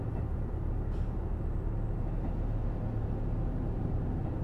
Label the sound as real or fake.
real